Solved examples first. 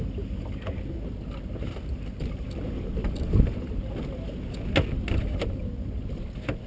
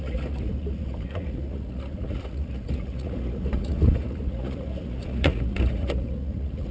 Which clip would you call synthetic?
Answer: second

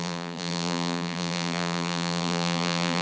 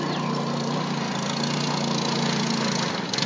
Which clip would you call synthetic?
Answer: first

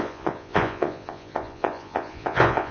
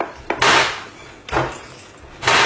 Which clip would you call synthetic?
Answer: first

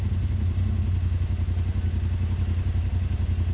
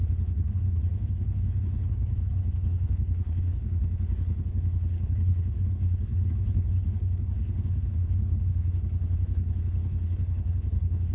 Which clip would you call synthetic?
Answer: second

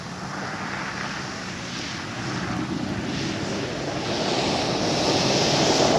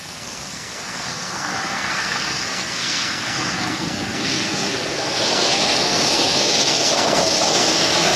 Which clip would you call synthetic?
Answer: second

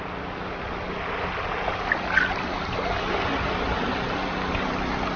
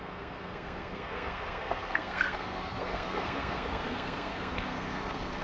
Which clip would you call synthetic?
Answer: second